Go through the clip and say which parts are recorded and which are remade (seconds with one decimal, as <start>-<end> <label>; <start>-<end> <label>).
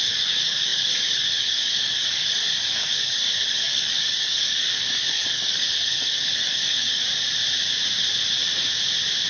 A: 0.0-7.0 remade; 7.0-9.3 recorded